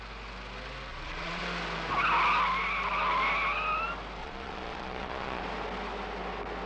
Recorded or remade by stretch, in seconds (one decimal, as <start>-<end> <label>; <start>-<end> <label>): 0.0-0.9 recorded; 0.9-1.4 remade; 1.4-4.2 recorded; 4.2-5.4 remade; 5.4-6.7 recorded